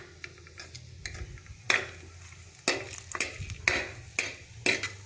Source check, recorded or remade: recorded